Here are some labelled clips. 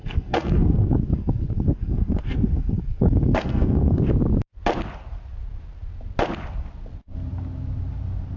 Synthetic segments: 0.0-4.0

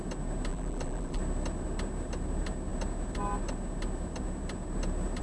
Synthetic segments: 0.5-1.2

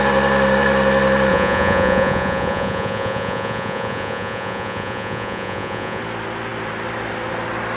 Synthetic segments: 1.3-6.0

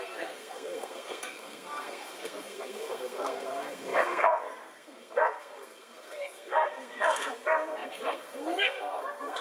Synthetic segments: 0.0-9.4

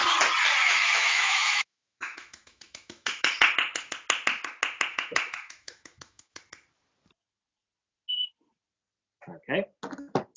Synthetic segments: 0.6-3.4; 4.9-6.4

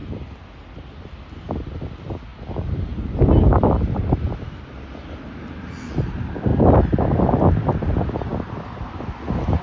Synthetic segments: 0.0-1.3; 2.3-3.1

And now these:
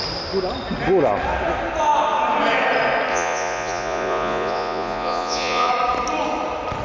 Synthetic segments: 3.1-5.7